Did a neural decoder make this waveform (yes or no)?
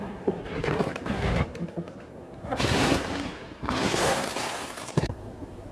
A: yes